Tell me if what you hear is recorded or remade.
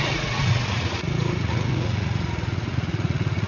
remade